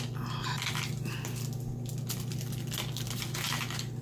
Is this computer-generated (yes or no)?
no